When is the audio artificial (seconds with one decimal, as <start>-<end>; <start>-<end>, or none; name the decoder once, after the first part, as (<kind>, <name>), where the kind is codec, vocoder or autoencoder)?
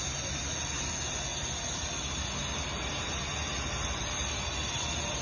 none